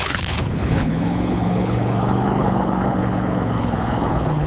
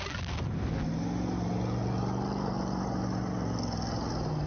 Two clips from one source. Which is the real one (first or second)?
second